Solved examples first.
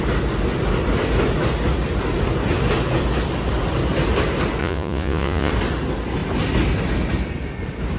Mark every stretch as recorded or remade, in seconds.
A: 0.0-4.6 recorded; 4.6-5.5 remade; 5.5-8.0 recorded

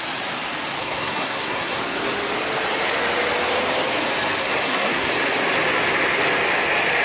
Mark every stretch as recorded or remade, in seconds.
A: 0.0-0.8 recorded; 0.8-1.8 remade; 1.8-4.4 recorded; 4.4-5.1 remade; 5.1-7.0 recorded

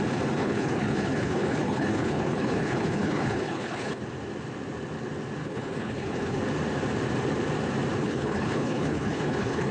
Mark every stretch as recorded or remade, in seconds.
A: 0.0-0.4 recorded; 0.4-4.0 remade; 4.0-5.4 recorded; 5.4-6.4 remade; 6.4-8.0 recorded; 8.0-9.7 remade

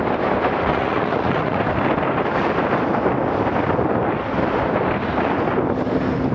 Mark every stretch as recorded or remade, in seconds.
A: 0.0-0.7 recorded; 0.7-1.6 remade; 1.6-6.3 recorded

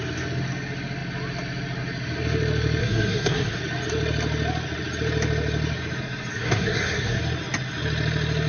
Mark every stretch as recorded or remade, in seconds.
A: 0.0-2.8 recorded; 2.8-3.6 remade; 3.6-6.3 recorded; 6.3-7.2 remade; 7.2-8.5 recorded

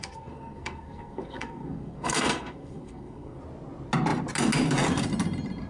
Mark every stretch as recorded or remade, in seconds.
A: 0.0-3.4 remade; 3.4-5.7 recorded

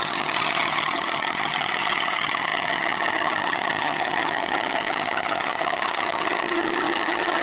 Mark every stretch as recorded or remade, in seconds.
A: 0.0-7.4 remade